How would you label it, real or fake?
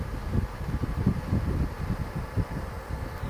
real